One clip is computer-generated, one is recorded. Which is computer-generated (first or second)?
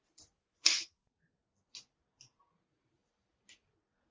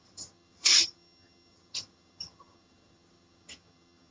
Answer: second